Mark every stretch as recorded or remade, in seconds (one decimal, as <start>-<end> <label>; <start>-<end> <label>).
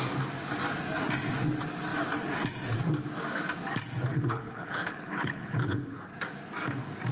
0.0-4.1 recorded; 4.1-6.0 remade; 6.0-7.1 recorded